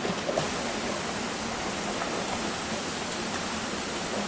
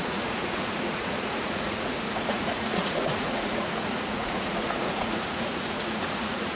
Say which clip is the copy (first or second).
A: second